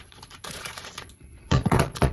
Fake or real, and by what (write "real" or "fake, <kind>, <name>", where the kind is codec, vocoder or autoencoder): fake, vocoder, Vocos